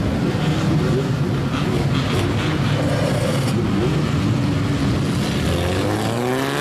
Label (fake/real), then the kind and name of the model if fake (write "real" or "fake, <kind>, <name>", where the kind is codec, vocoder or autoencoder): real